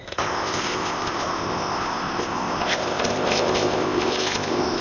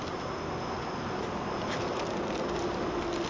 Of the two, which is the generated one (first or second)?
first